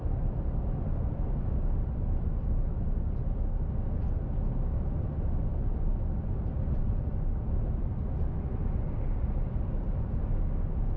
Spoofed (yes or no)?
no